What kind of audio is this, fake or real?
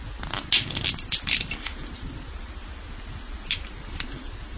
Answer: real